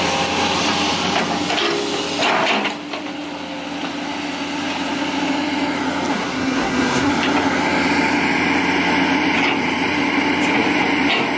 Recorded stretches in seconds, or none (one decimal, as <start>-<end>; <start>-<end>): 0.0-6.1; 7.1-11.4